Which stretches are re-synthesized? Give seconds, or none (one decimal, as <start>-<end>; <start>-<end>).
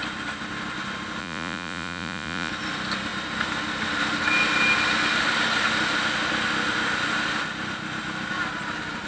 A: 1.2-2.5